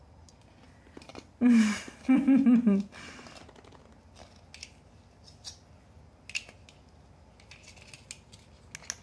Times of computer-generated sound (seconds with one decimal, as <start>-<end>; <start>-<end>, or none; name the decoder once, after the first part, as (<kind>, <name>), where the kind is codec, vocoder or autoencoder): none